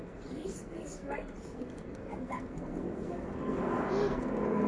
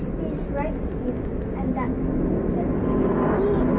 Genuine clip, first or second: second